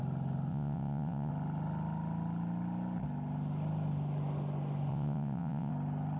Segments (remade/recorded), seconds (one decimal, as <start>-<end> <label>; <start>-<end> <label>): 0.0-0.5 recorded; 0.5-1.3 remade; 1.3-4.9 recorded; 4.9-5.7 remade; 5.7-6.2 recorded